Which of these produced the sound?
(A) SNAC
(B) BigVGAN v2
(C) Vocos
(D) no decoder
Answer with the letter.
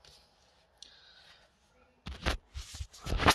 D